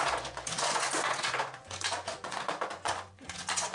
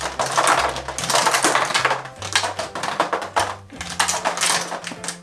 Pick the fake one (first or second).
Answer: first